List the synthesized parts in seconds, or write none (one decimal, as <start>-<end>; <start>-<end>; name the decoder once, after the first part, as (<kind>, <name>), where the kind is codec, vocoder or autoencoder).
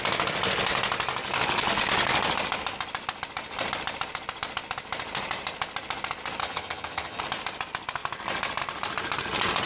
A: 6.4-7.2 (vocoder, HiFi-GAN)